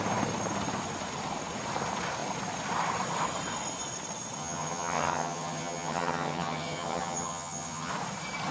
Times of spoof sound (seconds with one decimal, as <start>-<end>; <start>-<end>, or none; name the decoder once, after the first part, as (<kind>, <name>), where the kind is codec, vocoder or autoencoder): 4.4-7.9 (vocoder, HiFi-GAN)